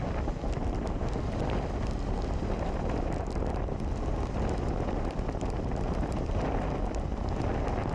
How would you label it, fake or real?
real